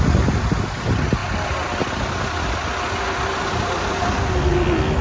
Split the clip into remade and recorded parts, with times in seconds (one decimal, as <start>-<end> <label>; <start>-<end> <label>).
0.0-5.0 recorded